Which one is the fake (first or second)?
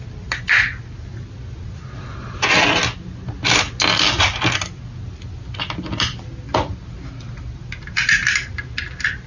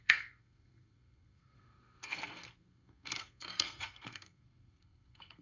second